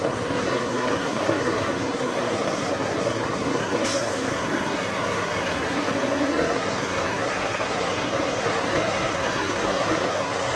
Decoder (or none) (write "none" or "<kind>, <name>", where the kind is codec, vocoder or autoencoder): codec, SNAC